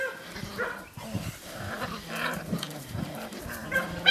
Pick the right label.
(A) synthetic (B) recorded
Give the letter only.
A